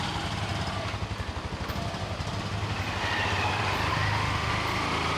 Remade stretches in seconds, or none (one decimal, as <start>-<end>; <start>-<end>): 3.9-4.5